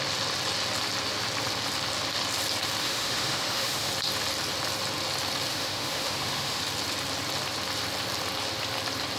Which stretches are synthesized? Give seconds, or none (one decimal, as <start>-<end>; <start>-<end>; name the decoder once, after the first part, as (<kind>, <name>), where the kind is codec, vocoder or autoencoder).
2.8-3.9 (autoencoder, DAC-VAE); 5.5-6.6